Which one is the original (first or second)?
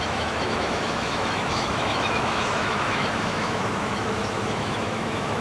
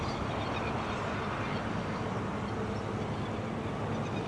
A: second